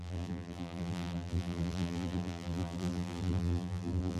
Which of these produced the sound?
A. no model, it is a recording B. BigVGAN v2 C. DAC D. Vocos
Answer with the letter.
B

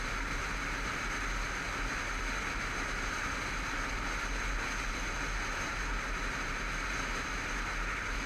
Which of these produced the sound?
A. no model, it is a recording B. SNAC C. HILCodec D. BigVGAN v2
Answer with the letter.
A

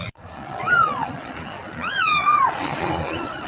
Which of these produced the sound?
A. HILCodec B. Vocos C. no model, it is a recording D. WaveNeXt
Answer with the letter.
B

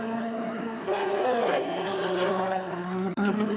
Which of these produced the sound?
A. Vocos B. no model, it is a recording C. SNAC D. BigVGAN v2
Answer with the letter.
C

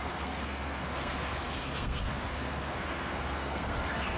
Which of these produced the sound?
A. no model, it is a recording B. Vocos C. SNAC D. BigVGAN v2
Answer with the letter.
C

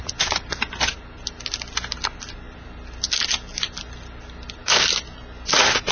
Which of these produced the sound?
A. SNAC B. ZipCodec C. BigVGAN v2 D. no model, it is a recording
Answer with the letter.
D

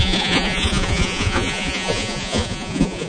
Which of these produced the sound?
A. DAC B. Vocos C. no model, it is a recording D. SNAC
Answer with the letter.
B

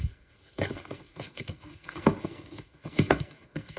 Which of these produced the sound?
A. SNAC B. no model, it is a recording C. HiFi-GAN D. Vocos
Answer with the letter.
A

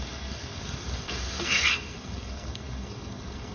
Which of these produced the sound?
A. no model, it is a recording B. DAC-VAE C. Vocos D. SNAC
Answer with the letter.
D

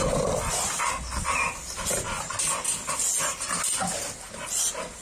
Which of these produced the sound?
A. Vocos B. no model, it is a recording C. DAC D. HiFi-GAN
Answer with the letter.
B